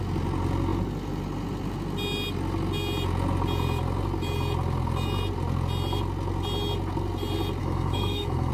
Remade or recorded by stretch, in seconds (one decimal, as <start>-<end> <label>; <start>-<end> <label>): 0.0-7.6 recorded; 7.6-8.5 remade